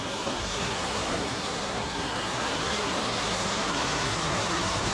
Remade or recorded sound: remade